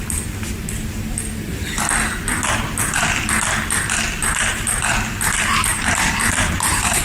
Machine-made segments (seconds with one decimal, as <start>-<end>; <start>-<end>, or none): 4.2-4.8; 5.7-7.0